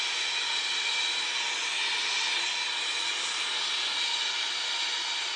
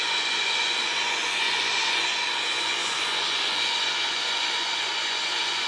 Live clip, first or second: first